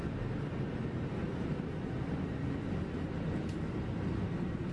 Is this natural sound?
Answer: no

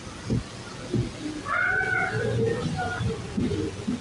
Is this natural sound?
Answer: yes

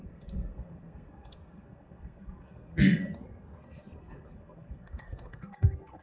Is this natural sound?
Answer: no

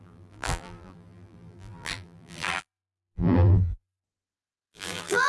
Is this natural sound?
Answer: no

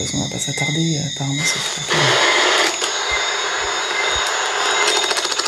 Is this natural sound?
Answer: yes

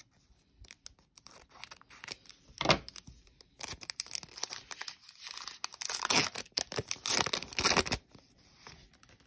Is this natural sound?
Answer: yes